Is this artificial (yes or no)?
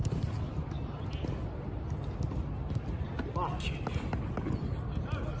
no